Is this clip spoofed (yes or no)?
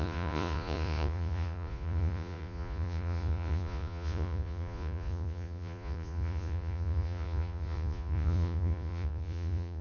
yes